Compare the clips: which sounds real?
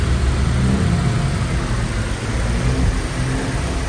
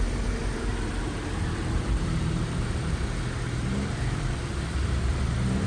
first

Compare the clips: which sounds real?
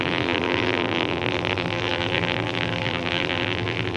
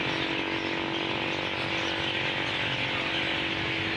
second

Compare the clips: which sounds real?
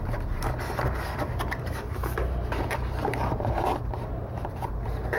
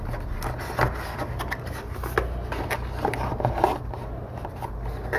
second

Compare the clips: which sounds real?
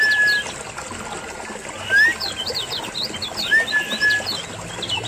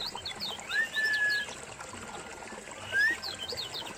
first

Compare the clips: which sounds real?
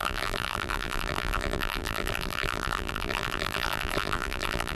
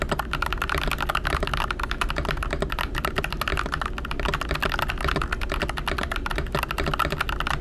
second